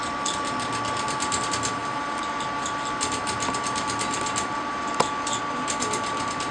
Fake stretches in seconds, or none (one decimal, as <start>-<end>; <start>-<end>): none

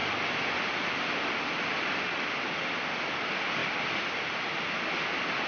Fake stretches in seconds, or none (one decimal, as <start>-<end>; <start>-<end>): 0.0-2.4; 3.6-4.7

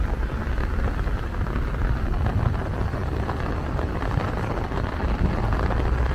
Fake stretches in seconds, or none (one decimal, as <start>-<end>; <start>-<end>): none

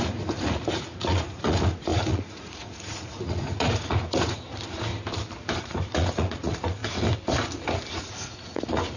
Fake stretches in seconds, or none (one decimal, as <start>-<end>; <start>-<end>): 0.0-4.9; 5.6-6.8; 7.9-9.0